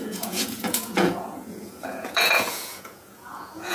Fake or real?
fake